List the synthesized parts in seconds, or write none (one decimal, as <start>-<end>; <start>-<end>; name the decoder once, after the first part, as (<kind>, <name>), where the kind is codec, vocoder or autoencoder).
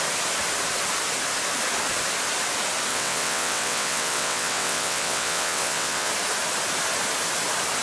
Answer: 2.9-6.1 (vocoder, WaveNeXt)